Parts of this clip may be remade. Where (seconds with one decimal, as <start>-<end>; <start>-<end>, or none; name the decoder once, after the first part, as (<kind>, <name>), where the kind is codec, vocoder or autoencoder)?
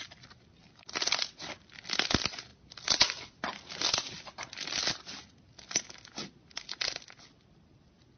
none